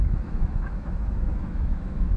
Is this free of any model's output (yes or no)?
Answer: no